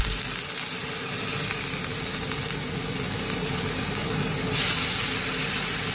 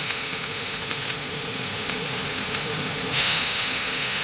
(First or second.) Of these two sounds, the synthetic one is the second